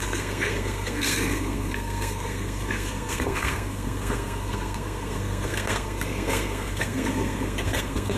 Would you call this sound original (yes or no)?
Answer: no